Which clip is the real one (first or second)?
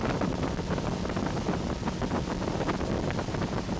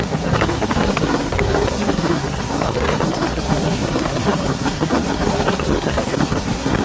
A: first